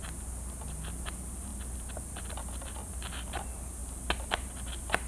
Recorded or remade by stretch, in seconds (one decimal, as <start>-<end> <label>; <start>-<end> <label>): 0.0-5.1 recorded